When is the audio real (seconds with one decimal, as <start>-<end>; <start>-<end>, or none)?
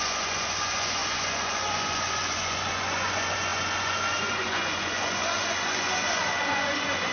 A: none